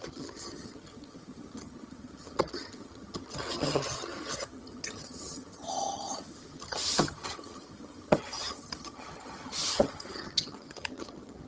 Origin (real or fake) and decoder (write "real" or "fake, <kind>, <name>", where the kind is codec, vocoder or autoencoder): fake, vocoder, HiFi-GAN